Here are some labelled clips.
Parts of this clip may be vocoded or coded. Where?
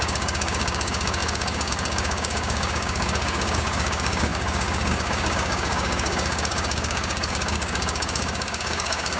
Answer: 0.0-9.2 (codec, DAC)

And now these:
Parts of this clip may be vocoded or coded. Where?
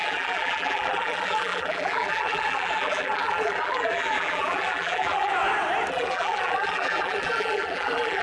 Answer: 0.0-5.3 (vocoder, BigVGAN v2); 5.9-8.2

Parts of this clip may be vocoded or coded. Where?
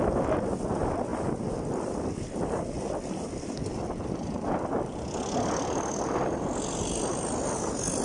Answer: none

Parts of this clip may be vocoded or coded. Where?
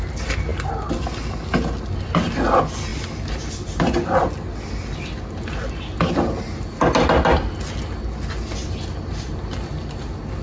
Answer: none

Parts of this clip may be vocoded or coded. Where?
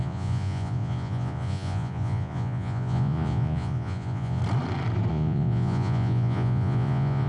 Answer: 0.0-4.4 (vocoder, Vocos); 5.1-7.3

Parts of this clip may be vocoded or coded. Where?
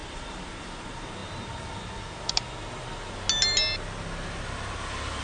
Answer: none